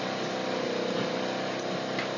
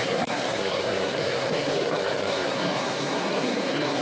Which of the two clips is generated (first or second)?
second